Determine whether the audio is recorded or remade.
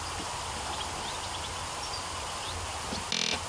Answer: recorded